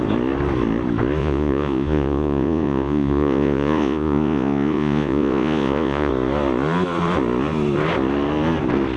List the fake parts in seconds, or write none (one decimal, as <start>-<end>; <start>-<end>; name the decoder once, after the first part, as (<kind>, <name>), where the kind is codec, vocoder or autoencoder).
1.2-6.1 (vocoder, Vocos)